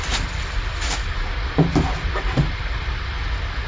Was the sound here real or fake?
real